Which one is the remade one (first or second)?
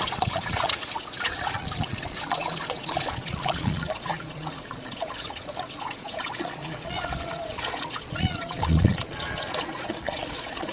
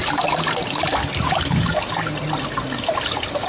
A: first